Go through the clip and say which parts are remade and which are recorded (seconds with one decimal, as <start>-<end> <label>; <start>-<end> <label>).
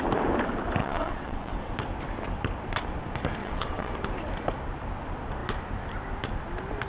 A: 0.0-0.8 recorded; 0.8-1.7 remade; 1.7-3.4 recorded; 3.4-3.9 remade; 3.9-6.9 recorded